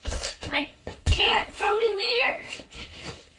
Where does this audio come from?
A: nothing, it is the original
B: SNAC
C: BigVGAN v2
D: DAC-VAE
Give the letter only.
B